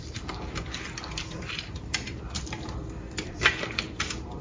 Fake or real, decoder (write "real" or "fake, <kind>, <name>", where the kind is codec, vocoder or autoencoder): fake, vocoder, BigVGAN v2